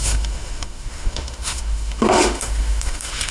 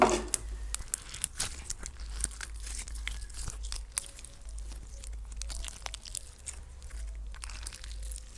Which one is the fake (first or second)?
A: first